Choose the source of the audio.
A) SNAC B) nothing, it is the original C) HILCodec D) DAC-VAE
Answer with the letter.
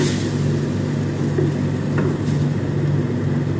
B